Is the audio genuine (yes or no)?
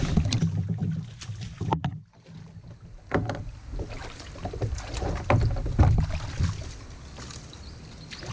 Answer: yes